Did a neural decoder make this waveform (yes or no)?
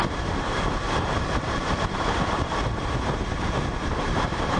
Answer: yes